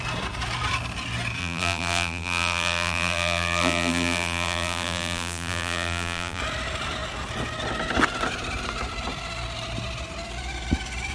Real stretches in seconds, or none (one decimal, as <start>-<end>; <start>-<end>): 0.0-1.4; 6.4-11.1